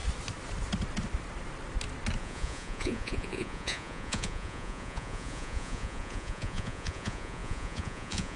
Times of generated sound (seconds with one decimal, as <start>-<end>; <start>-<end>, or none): 2.2-8.4